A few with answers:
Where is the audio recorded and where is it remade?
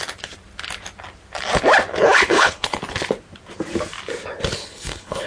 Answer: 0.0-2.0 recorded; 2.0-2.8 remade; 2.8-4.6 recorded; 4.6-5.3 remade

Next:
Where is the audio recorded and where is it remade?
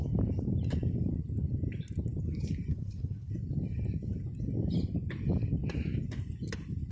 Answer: 0.0-2.7 recorded; 2.7-3.3 remade; 3.3-6.9 recorded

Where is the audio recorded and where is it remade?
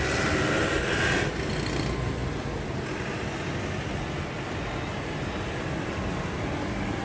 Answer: 0.0-7.0 recorded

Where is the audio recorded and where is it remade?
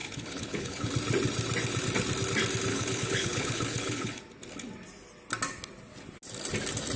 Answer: 0.0-0.9 remade; 0.9-2.7 recorded; 2.7-4.2 remade; 4.2-7.0 recorded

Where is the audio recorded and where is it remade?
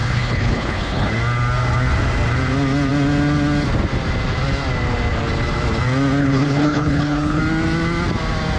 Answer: 0.0-1.1 remade; 1.1-6.2 recorded; 6.2-7.4 remade; 7.4-8.6 recorded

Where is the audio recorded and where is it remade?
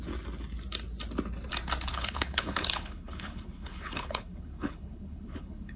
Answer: 0.0-1.9 recorded; 1.9-5.8 remade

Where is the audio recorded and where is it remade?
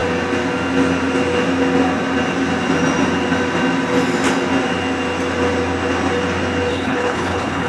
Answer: 0.0-6.7 recorded; 6.7-7.7 remade